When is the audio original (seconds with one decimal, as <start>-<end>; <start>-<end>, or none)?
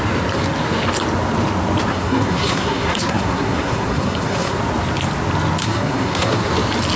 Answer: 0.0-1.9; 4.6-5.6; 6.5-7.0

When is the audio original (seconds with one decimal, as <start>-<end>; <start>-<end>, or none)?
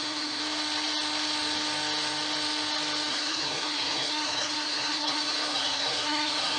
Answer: 0.4-3.1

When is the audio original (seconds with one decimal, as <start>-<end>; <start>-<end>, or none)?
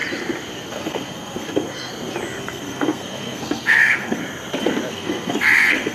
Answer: 0.0-0.7; 1.9-2.4; 4.2-4.9